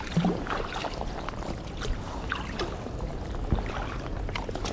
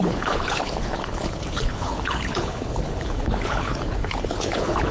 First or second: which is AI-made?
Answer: second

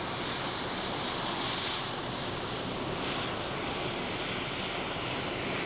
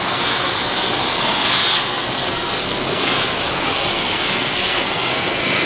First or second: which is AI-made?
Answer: second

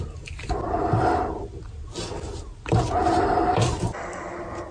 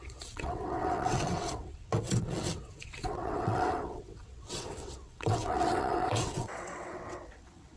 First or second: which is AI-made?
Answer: second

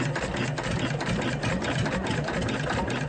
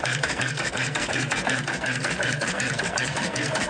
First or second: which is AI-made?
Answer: second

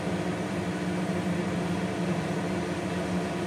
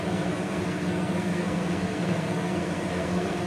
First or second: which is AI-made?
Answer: second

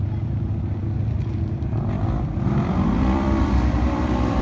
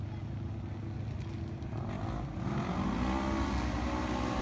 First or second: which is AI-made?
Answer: first